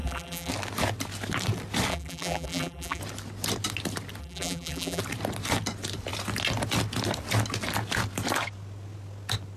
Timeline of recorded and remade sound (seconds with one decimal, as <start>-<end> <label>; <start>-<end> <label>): 0.0-0.5 remade; 0.5-1.9 recorded; 1.9-3.0 remade; 3.0-4.2 recorded; 4.2-5.0 remade; 5.0-9.6 recorded